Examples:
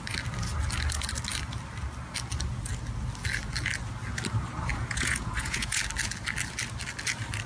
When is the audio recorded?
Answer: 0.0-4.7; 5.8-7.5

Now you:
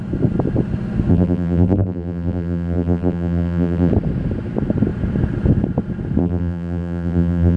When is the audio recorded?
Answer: 0.0-1.1; 3.9-6.2

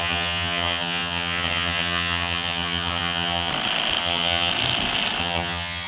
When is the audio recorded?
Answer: 3.5-4.0; 4.5-5.2

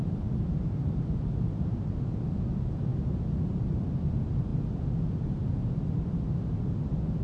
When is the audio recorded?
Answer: 0.0-7.2

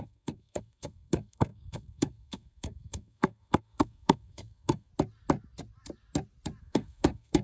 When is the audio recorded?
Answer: 4.9-6.6

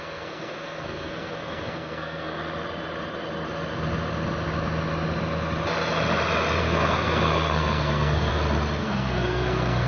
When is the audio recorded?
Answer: 2.4-6.6; 8.3-8.8

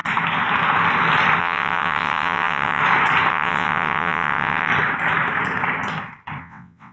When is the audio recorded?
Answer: 0.0-1.4; 2.8-3.3; 4.7-6.4